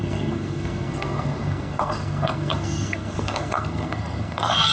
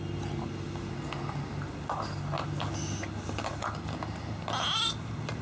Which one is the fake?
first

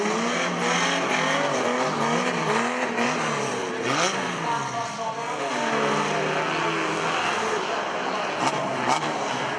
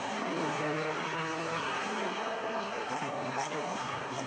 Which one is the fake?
second